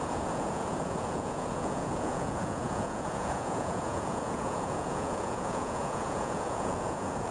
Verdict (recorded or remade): remade